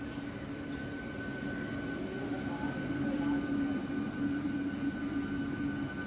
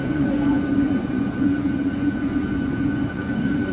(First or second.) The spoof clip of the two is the second